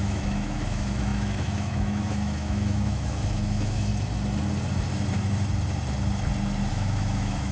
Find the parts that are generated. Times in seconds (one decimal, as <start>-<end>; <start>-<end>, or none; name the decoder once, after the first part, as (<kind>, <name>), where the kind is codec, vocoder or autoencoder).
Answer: 0.0-3.9 (autoencoder, DAC-VAE); 6.7-7.5